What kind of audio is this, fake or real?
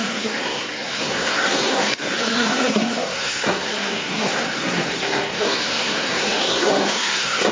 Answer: fake